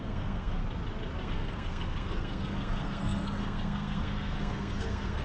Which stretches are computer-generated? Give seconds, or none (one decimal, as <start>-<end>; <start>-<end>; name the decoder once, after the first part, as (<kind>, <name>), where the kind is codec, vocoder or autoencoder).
0.0-0.6 (codec, SNAC); 1.2-5.2